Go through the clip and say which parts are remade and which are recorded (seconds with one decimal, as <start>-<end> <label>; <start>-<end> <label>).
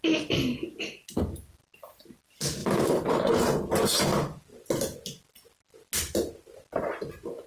0.0-2.6 recorded; 2.6-3.4 remade; 3.4-7.5 recorded